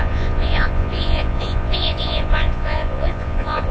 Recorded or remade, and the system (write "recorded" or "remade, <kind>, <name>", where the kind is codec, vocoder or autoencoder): remade, vocoder, Vocos